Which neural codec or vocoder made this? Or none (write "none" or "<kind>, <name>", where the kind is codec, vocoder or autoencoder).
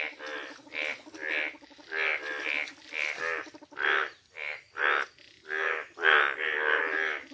none